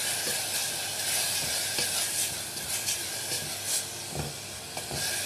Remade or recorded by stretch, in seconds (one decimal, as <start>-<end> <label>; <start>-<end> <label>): 0.0-5.3 recorded